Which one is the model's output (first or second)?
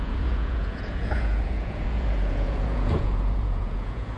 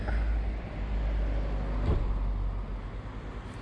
first